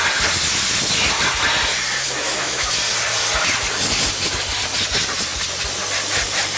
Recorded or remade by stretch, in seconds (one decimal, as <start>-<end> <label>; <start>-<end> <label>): 0.0-2.2 recorded; 2.2-2.7 remade; 2.7-6.6 recorded